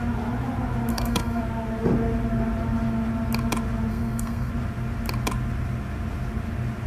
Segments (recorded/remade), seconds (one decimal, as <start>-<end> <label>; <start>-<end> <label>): 0.0-0.9 recorded; 0.9-1.4 remade; 1.4-3.9 recorded; 3.9-4.5 remade; 4.5-6.9 recorded